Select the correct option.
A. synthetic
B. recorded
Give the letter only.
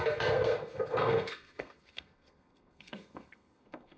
A